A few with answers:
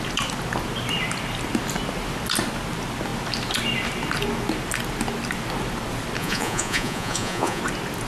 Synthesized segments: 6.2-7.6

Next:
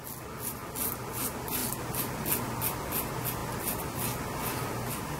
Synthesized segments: none

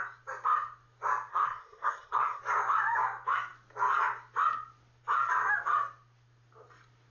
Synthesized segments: 1.3-2.4

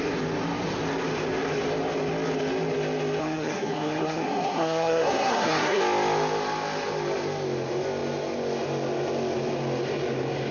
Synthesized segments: 3.2-5.8

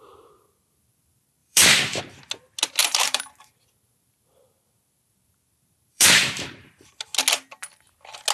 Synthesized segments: 1.4-2.0; 2.8-3.5; 5.9-6.9